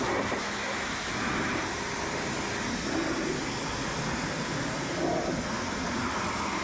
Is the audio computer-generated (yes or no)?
no